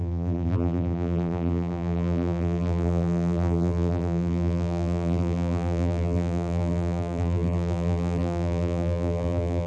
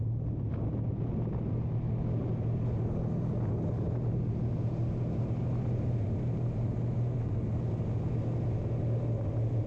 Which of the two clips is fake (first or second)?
first